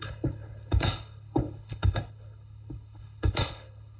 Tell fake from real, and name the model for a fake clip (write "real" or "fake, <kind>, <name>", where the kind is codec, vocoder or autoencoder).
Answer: fake, codec, HILCodec